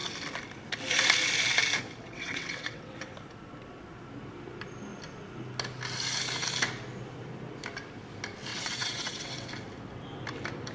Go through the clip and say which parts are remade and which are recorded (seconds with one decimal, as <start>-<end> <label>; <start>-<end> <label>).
0.0-2.0 recorded; 2.0-3.1 remade; 3.1-8.5 recorded; 8.5-9.5 remade; 9.5-10.7 recorded